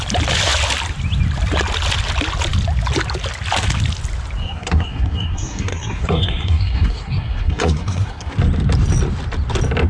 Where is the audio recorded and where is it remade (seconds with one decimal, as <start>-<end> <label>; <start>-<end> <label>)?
0.0-4.4 recorded; 4.4-8.3 remade; 8.3-9.9 recorded